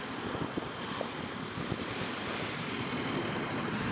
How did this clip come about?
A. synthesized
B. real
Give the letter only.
B